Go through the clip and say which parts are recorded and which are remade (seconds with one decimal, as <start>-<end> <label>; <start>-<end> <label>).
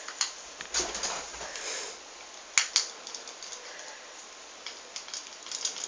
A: 0.0-5.9 recorded